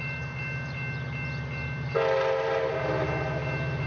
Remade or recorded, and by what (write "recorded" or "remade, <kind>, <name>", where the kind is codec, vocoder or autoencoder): recorded